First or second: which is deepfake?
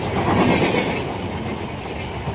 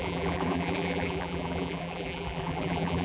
second